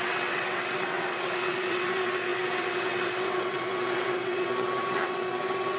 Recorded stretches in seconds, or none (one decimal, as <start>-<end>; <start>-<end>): none